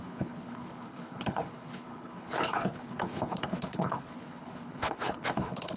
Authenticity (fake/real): fake